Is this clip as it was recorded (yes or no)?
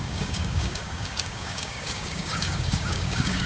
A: no